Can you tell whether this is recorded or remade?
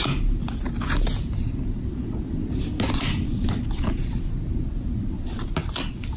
recorded